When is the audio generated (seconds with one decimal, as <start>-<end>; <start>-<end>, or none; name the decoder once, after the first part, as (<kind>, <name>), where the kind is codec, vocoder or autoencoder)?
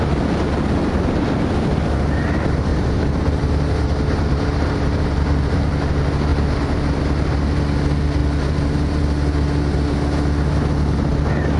2.7-5.6 (vocoder, BigVGAN v2); 6.3-7.0; 8.2-9.0